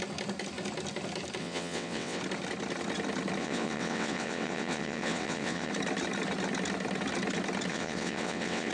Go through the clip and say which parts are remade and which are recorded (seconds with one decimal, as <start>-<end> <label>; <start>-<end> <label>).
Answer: 0.0-1.4 recorded; 1.4-2.2 remade; 2.2-3.4 recorded; 3.4-5.7 remade; 5.7-7.7 recorded; 7.7-8.7 remade